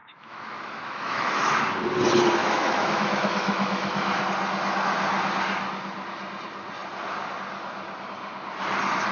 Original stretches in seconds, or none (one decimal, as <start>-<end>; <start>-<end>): 1.6-2.4; 4.2-9.1